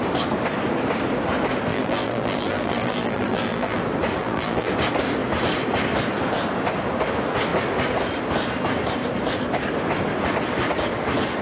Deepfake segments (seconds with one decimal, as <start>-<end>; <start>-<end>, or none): 1.7-3.8; 4.2-4.7

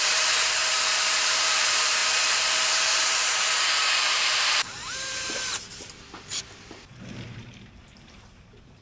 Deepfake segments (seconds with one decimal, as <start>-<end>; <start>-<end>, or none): 0.0-8.8

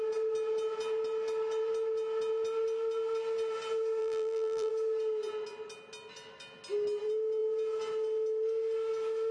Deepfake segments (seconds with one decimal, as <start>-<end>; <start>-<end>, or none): 4.0-4.7

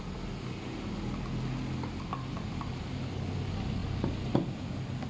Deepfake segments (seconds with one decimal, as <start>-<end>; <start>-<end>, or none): none